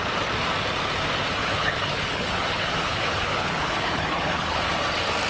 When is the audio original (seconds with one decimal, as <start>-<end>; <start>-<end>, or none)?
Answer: 0.0-1.4; 4.6-5.3